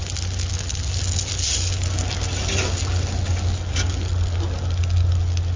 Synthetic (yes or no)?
no